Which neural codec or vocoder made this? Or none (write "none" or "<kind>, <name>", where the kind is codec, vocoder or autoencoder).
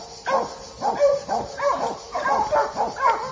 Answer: none